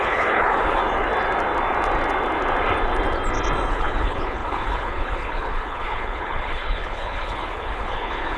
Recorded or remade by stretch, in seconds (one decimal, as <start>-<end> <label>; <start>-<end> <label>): 0.0-0.8 remade; 0.8-3.7 recorded; 3.7-8.4 remade